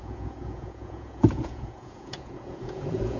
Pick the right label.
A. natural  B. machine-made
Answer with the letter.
B